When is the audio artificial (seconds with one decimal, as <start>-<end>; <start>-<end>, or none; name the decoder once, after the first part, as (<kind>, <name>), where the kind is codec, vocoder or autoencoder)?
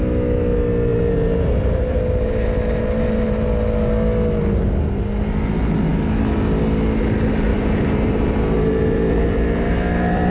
0.9-3.5 (vocoder, BigVGAN v2); 7.5-10.3